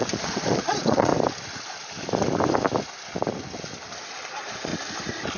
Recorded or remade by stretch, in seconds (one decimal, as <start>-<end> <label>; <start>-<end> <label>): 0.0-1.1 remade; 1.1-4.3 recorded; 4.3-4.7 remade; 4.7-5.4 recorded